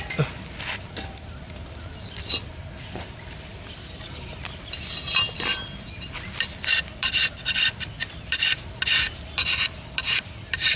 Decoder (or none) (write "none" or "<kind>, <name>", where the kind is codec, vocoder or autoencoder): vocoder, BigVGAN v2